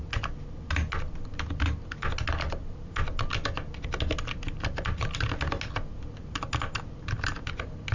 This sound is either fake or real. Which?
real